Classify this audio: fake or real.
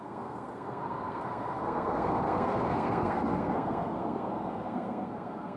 fake